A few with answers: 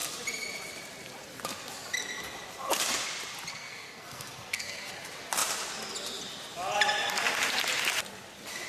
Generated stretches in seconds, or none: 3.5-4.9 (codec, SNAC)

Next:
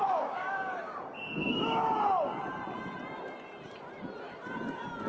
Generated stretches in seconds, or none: 0.0-1.9 (codec, DAC)

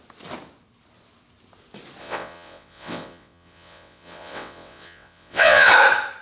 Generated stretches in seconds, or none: 2.0-5.7 (vocoder, WaveNeXt)

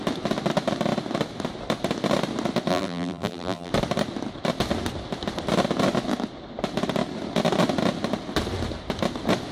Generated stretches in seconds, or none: 2.7-3.7 (vocoder, BigVGAN v2)